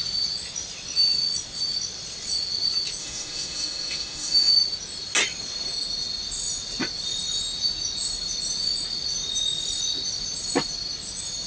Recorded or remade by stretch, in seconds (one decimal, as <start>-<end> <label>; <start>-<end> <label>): 0.0-3.0 recorded; 3.0-4.5 remade; 4.5-11.5 recorded